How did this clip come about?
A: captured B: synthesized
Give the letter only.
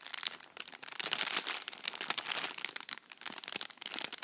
A